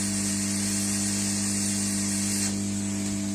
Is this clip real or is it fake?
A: real